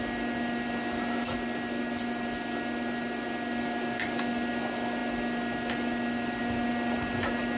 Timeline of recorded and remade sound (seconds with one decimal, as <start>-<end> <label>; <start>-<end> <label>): 0.0-7.6 recorded